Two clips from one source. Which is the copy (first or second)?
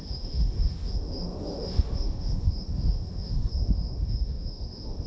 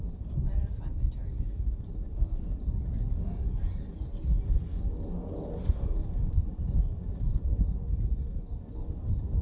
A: first